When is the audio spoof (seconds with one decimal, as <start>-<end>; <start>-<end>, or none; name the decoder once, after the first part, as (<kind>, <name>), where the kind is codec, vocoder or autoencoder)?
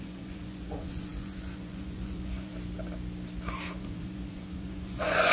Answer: 0.0-2.5 (vocoder, Vocos); 3.7-5.3